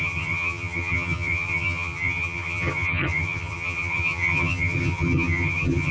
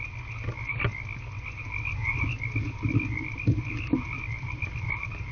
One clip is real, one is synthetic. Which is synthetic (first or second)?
first